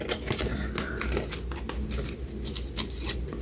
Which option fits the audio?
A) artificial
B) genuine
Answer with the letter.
B